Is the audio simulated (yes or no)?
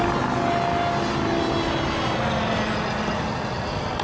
no